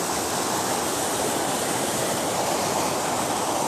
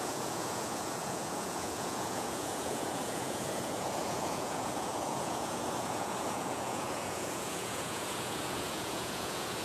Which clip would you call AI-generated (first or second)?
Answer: second